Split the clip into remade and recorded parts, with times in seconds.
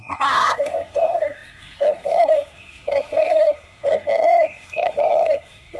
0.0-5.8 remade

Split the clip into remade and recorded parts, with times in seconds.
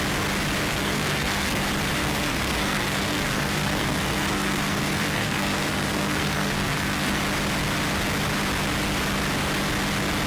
0.0-0.7 recorded; 0.7-1.6 remade; 1.6-2.0 recorded; 2.0-7.2 remade; 7.2-10.3 recorded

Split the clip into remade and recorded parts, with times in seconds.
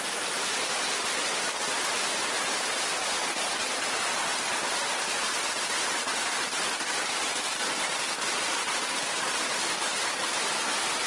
0.0-11.1 recorded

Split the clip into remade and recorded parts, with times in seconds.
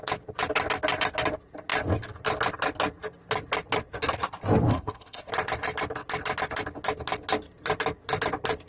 0.0-4.7 recorded; 4.7-5.3 remade; 5.3-8.7 recorded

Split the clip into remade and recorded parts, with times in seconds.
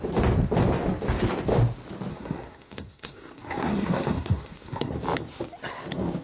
0.0-2.1 recorded; 2.1-4.9 remade; 4.9-6.2 recorded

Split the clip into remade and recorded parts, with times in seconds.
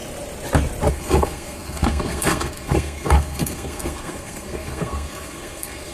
0.0-0.9 recorded; 0.9-5.9 remade